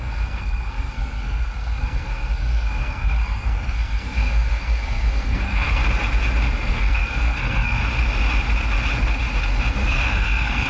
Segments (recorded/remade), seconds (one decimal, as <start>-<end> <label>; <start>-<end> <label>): 0.0-5.8 remade; 5.8-6.7 recorded; 6.7-7.8 remade; 7.8-9.7 recorded; 9.7-10.7 remade